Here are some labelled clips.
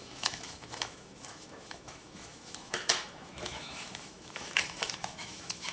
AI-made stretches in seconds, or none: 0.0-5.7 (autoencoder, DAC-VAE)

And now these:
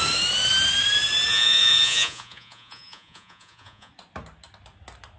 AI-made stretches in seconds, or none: 1.3-3.9 (vocoder, Vocos)